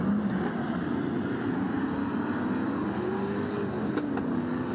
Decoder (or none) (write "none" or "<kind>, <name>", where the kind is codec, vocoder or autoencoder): none